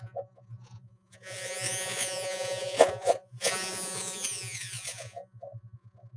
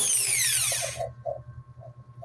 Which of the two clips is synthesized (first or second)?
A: first